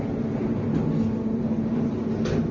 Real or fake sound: real